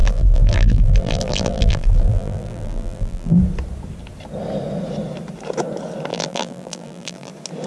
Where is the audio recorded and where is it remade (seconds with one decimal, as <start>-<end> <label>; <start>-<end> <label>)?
0.0-3.4 remade; 3.4-6.1 recorded; 6.1-7.3 remade; 7.3-7.7 recorded